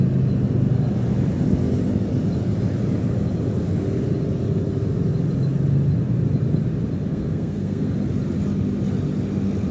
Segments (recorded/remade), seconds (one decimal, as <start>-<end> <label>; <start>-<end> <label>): 0.0-7.1 recorded; 7.1-7.9 remade; 7.9-9.7 recorded